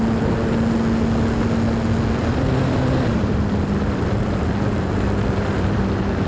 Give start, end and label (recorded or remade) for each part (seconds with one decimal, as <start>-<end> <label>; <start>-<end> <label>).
0.0-2.2 recorded; 2.2-6.3 remade